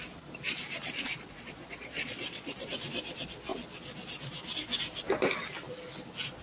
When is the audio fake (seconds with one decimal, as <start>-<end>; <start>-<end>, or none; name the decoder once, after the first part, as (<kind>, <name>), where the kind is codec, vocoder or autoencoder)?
0.8-2.7 (vocoder, Vocos)